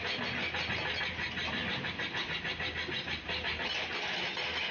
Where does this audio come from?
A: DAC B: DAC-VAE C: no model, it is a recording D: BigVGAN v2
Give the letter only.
C